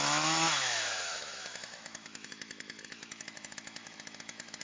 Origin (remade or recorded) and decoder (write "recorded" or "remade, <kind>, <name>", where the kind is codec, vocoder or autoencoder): remade, autoencoder, DAC-VAE